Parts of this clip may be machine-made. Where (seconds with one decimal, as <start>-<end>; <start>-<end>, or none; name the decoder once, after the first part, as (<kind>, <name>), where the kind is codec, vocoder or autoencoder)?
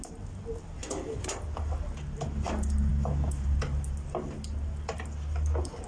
none